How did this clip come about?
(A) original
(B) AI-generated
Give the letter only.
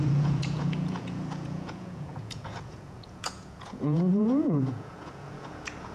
B